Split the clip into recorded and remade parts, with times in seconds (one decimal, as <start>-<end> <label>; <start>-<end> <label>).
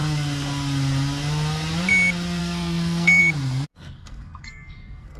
0.0-2.4 recorded; 2.4-3.2 remade; 3.2-3.7 recorded; 3.7-5.2 remade